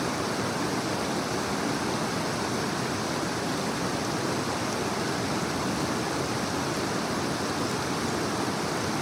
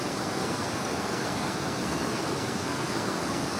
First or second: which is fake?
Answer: second